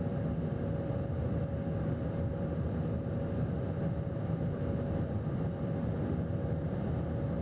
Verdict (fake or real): real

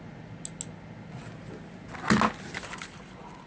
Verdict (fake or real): real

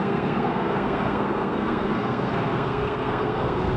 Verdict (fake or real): fake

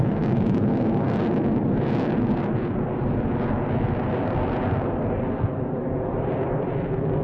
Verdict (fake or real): real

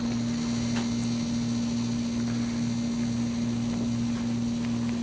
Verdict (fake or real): real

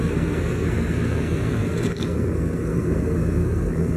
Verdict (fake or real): fake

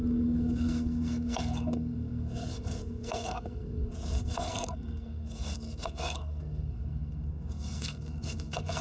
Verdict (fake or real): fake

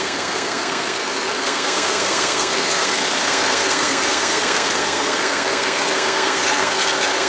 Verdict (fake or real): fake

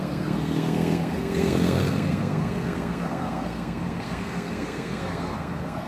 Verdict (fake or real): fake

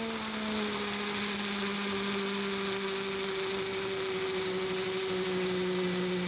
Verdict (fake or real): real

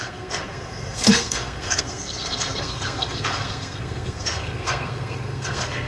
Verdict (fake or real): fake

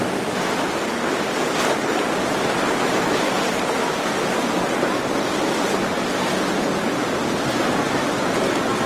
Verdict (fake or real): real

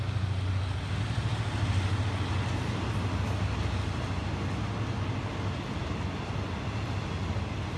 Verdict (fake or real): real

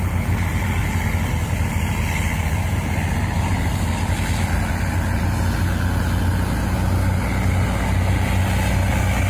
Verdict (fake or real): real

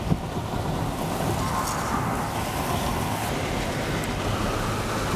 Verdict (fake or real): real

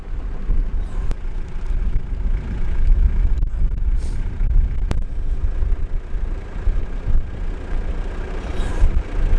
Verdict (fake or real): real